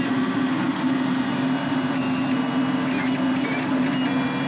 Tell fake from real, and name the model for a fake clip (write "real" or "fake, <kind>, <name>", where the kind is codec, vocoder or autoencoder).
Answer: real